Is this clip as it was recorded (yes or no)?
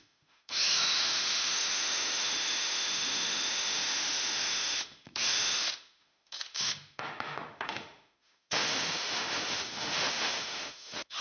no